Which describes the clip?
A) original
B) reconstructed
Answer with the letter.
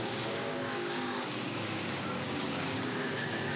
B